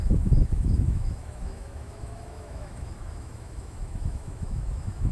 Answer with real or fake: fake